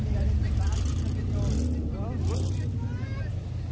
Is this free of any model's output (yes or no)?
yes